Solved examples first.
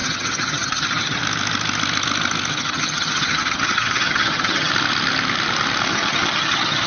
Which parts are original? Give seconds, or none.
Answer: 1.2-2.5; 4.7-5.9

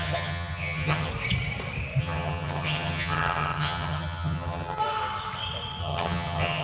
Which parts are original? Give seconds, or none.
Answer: 1.1-2.0; 4.8-5.8

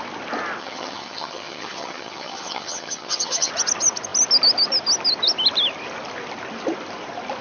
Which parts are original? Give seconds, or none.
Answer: 0.0-0.6; 3.5-7.4

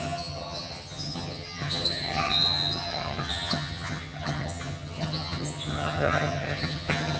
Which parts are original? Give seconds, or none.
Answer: none